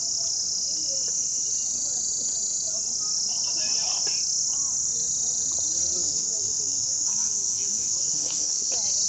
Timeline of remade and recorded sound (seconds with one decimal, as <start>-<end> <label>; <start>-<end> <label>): 0.0-6.0 recorded; 6.0-8.7 remade; 8.7-9.1 recorded